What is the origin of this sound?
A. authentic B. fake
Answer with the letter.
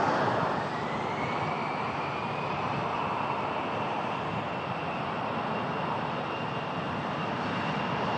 A